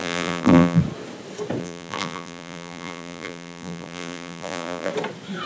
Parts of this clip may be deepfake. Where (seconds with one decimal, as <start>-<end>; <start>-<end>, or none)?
0.0-0.8; 1.6-4.9